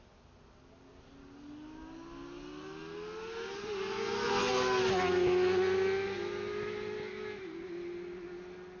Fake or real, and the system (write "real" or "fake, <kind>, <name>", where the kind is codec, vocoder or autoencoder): real